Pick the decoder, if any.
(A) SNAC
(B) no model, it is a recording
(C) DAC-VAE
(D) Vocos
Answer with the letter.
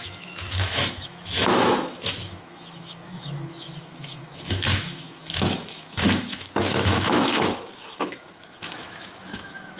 C